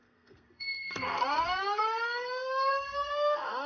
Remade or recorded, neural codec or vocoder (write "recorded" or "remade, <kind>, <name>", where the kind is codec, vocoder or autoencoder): remade, codec, SNAC